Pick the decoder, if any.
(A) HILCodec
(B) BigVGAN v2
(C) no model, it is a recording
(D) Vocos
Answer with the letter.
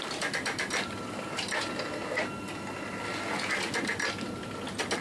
C